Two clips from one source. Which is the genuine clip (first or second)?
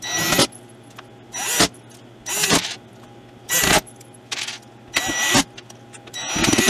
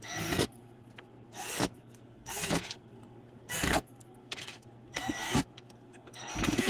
first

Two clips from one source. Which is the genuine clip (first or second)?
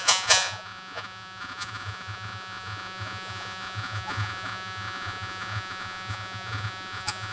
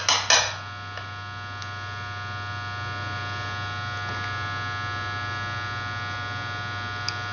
second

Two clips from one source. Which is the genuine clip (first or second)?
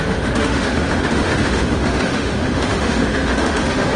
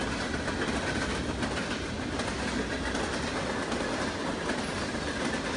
second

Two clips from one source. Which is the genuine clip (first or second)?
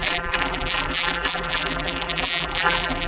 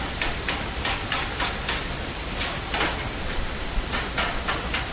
second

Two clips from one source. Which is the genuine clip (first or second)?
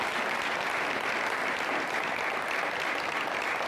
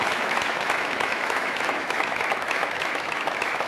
first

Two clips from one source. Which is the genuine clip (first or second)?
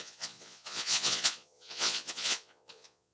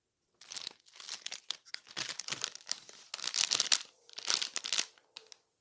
second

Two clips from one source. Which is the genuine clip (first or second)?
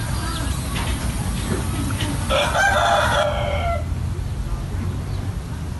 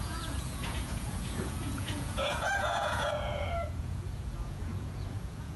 first